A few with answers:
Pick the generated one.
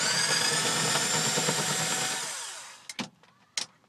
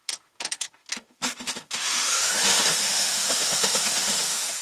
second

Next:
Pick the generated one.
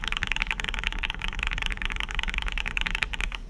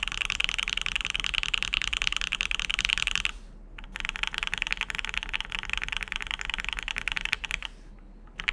first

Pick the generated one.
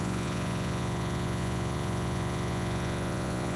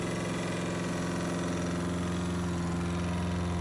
first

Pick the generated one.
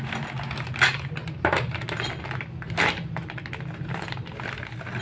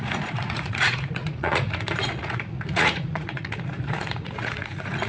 second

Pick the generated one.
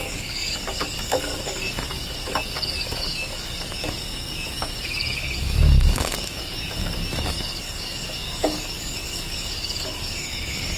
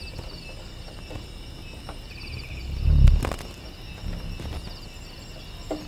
first